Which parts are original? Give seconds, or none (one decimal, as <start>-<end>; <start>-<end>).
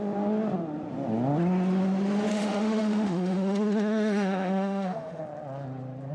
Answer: 0.0-2.3; 5.2-6.1